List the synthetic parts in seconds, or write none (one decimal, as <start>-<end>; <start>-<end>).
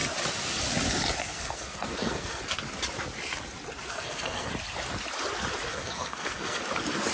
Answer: 1.2-2.4; 3.9-4.5; 5.7-6.6